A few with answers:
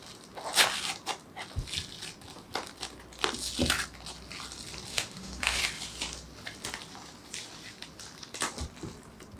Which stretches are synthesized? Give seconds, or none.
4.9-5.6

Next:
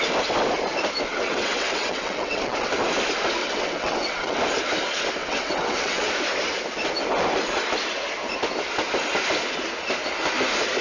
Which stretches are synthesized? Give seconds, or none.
1.1-2.7; 3.4-4.4; 5.2-6.1

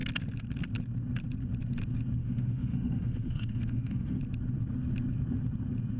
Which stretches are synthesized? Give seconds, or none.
2.2-4.2